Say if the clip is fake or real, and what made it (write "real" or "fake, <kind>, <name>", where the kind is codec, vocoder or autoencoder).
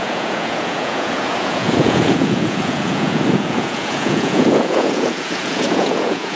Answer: fake, vocoder, Vocos